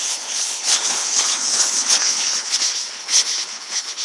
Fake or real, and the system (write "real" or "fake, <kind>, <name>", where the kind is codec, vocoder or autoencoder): fake, codec, HILCodec